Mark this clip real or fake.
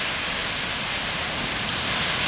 real